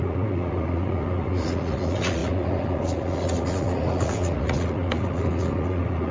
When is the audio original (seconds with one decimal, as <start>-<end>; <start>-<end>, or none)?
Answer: none